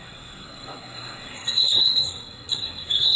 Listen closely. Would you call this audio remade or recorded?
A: remade